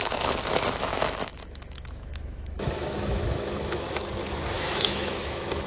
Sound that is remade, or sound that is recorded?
remade